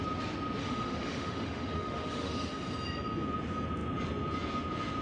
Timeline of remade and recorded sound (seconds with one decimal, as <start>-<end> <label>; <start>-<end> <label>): 0.0-0.6 recorded; 0.6-2.5 remade; 2.5-5.0 recorded